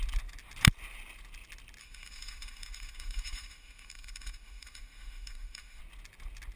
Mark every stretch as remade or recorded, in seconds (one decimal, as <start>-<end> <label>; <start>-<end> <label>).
0.0-1.8 recorded; 1.8-5.8 remade; 5.8-6.6 recorded